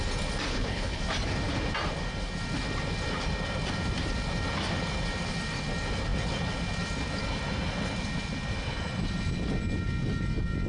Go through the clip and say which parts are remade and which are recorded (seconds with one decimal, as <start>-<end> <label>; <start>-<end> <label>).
0.0-0.5 recorded; 0.5-1.0 remade; 1.0-10.7 recorded